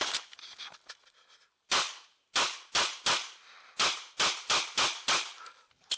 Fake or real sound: real